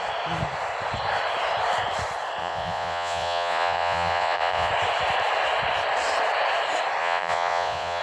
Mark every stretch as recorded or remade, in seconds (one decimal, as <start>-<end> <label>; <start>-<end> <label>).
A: 0.0-2.4 recorded; 2.4-4.7 remade; 4.7-7.0 recorded; 7.0-8.0 remade